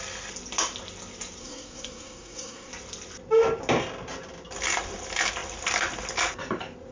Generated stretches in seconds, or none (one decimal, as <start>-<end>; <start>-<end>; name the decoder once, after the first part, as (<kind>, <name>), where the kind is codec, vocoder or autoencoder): 1.4-2.7 (codec, SNAC)